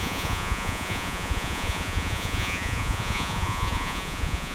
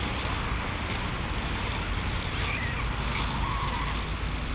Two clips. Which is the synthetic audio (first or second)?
first